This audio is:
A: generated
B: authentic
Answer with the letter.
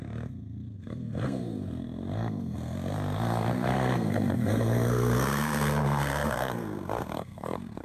A